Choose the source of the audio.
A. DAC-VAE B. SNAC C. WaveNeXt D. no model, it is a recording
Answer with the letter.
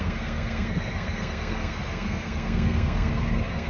B